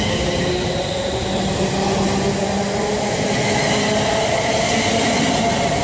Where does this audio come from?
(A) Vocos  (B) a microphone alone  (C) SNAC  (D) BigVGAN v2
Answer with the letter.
B